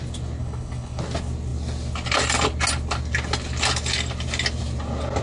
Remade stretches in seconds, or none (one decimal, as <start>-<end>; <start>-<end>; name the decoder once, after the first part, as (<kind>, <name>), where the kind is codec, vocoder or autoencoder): 0.4-1.0 (codec, HILCodec)

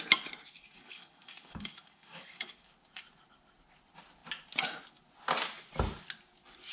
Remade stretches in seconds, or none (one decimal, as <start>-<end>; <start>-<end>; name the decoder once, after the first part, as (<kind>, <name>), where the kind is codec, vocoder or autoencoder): 0.5-2.7 (codec, DAC)

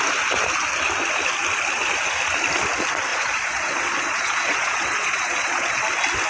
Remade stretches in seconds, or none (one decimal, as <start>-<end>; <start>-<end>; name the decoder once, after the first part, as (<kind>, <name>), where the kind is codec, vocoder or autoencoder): 3.1-5.8 (vocoder, Vocos)

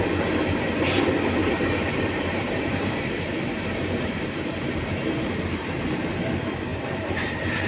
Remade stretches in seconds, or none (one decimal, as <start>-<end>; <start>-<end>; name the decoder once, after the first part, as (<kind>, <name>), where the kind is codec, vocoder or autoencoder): 1.4-6.0 (vocoder, BigVGAN v2); 6.7-7.2

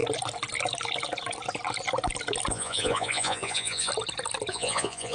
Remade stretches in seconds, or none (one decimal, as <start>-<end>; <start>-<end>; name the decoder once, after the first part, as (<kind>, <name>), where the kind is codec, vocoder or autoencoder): 2.5-3.9 (vocoder, Vocos); 4.5-5.1

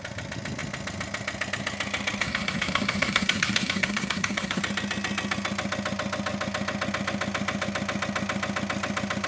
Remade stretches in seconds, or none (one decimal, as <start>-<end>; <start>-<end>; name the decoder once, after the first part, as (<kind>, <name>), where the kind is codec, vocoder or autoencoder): 2.2-4.6 (codec, SNAC)